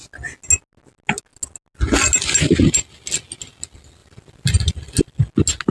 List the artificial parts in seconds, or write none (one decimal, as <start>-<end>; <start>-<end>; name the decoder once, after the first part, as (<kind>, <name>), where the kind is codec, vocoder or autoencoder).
none